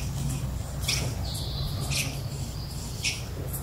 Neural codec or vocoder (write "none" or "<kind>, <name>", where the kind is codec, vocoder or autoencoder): none